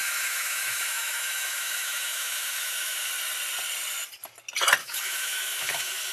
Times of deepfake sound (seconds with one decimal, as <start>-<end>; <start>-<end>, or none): 0.0-3.1; 4.8-6.1